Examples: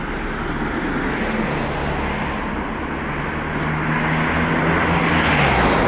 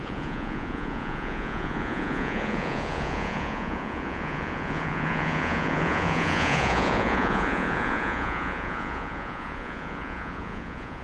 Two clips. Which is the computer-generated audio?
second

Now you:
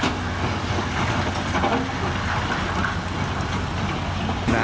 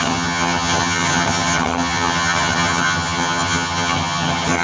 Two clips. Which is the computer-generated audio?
second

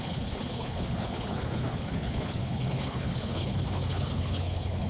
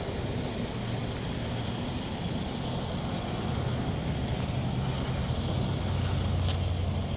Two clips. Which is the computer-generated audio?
first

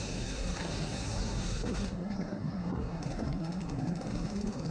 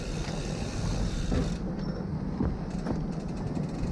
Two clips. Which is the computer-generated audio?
first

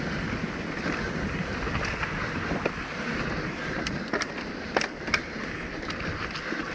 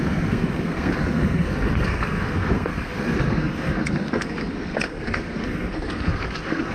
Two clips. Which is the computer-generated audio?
second